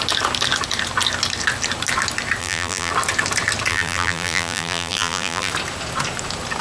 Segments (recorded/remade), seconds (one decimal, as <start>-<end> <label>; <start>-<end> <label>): 0.0-2.4 recorded; 2.4-2.9 remade; 2.9-3.7 recorded; 3.7-5.5 remade; 5.5-6.6 recorded